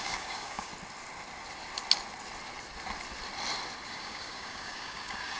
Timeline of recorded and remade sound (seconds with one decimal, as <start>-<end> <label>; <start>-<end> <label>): 0.0-0.7 remade; 0.7-3.9 recorded; 3.9-5.4 remade